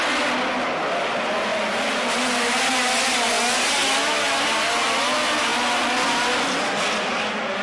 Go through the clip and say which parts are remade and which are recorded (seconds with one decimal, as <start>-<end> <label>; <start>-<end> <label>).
0.0-7.6 recorded